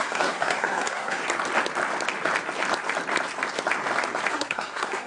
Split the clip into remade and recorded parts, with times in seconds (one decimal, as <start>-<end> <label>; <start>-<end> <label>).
0.0-1.2 remade; 1.2-4.3 recorded; 4.3-5.1 remade